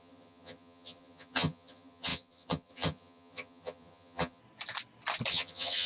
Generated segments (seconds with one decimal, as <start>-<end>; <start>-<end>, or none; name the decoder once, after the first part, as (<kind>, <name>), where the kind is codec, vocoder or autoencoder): 0.0-4.4 (vocoder, HiFi-GAN); 5.3-5.9